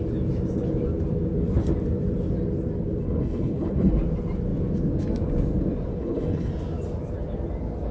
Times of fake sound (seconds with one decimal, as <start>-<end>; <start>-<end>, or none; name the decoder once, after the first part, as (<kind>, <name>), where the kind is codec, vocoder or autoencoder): 3.0-3.9 (codec, HILCodec); 5.9-6.5